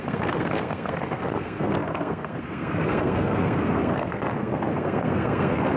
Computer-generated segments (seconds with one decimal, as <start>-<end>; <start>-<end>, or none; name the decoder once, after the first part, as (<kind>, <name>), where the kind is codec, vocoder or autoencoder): 0.0-5.8 (codec, SNAC)